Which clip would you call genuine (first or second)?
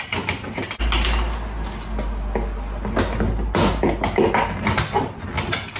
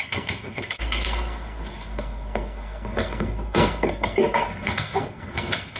first